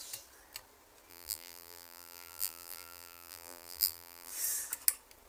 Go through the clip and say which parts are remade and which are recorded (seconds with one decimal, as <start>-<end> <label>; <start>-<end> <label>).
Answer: 0.0-1.1 recorded; 1.1-4.3 remade; 4.3-5.3 recorded